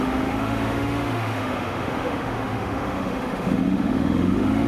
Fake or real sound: fake